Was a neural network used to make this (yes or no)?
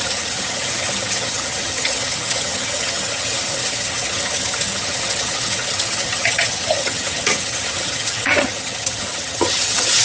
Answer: yes